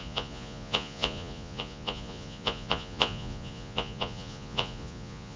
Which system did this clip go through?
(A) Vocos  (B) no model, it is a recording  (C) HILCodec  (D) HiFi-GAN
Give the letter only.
A